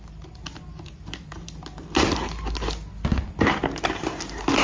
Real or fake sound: real